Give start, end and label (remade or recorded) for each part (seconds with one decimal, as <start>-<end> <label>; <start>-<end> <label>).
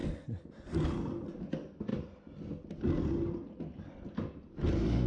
0.0-5.1 recorded